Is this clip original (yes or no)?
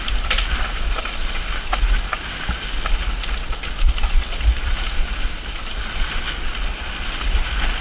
yes